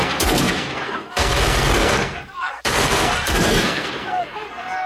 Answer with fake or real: fake